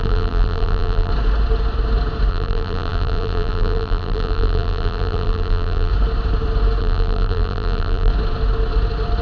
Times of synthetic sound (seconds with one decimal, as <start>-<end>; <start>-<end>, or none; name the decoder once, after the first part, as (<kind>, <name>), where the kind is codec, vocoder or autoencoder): 0.0-1.1 (vocoder, BigVGAN v2); 2.3-5.9; 6.8-8.1